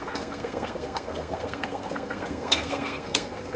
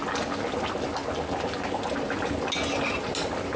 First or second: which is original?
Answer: second